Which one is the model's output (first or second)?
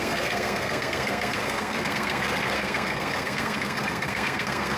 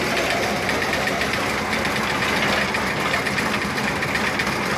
first